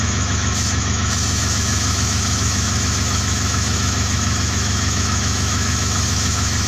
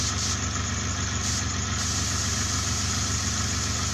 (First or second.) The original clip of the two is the second